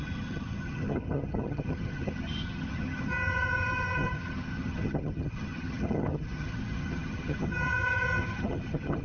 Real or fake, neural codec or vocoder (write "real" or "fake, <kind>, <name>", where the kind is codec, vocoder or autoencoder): fake, vocoder, HiFi-GAN